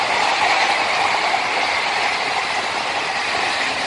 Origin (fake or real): real